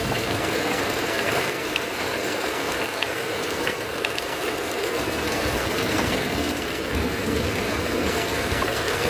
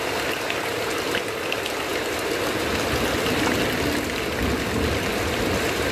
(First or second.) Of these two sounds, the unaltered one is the second